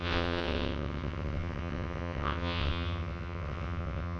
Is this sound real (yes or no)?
no